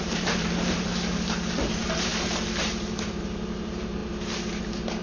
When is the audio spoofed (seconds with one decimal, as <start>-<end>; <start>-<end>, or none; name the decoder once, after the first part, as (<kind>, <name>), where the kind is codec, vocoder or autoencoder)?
0.0-0.9 (vocoder, BigVGAN v2); 1.6-2.1; 2.6-5.0